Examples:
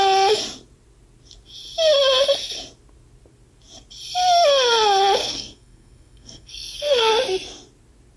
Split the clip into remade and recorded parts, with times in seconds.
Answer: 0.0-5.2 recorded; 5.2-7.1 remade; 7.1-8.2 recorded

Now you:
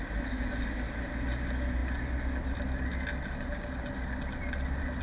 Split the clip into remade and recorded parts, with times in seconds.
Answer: 0.0-5.0 recorded

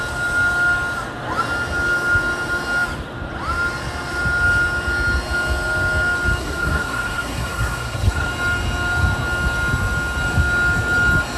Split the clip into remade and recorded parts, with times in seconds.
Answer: 0.0-6.4 recorded; 6.4-8.3 remade; 8.3-11.4 recorded